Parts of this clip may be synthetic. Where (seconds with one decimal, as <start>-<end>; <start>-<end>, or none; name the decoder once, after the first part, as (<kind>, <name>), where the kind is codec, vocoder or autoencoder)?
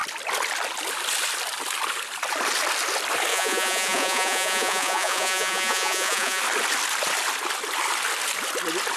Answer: 3.3-6.4 (vocoder, Vocos)